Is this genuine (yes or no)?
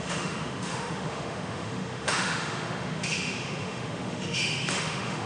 no